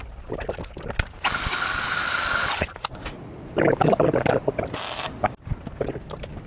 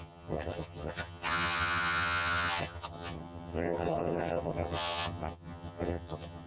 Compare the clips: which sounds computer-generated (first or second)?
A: second